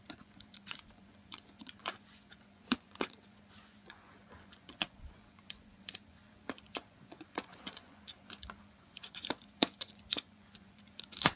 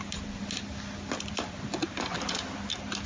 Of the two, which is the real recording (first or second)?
second